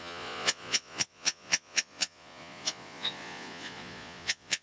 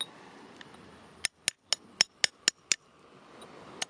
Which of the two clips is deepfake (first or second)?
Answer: first